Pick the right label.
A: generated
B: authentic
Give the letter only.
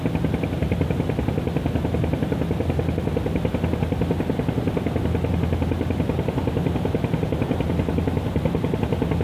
B